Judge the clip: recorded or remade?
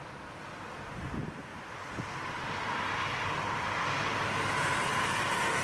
recorded